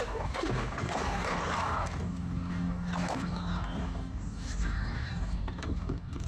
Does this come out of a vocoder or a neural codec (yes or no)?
yes